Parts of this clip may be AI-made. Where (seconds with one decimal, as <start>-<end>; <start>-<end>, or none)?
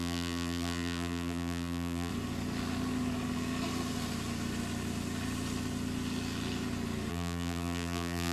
0.0-2.1; 7.1-8.3